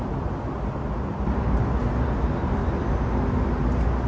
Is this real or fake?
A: real